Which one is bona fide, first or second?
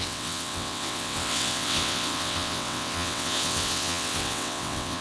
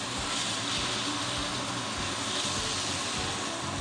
second